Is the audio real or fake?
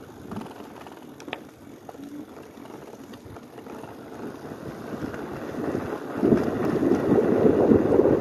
real